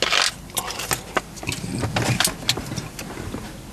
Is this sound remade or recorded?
recorded